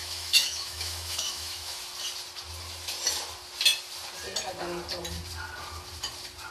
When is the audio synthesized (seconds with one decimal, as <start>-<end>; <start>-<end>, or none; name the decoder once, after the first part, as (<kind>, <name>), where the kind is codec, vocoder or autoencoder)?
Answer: 0.0-1.8 (autoencoder, DAC-VAE)